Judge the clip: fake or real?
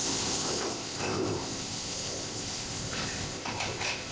fake